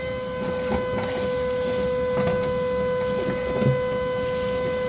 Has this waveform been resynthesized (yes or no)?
no